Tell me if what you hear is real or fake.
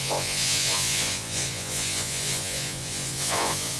fake